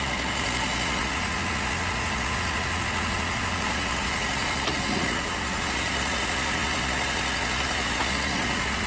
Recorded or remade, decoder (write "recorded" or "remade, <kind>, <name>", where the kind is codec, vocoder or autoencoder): remade, vocoder, Vocos